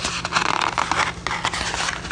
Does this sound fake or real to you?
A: real